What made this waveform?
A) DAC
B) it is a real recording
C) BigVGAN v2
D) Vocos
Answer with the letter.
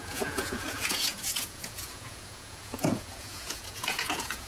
D